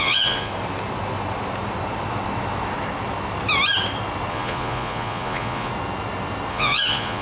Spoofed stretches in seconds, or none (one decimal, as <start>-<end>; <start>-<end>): 0.0-0.5; 4.3-5.7; 6.5-7.2